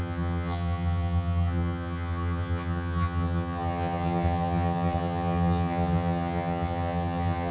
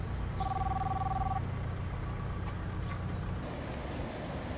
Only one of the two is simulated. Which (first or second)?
first